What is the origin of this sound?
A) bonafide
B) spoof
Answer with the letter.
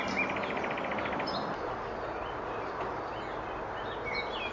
A